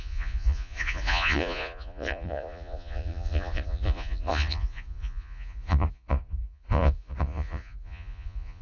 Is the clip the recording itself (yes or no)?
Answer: no